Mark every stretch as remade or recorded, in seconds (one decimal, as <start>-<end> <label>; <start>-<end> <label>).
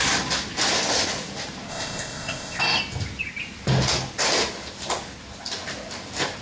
0.0-1.7 recorded; 1.7-2.6 remade; 2.6-6.4 recorded